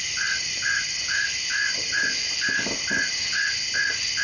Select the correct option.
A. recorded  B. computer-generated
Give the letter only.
A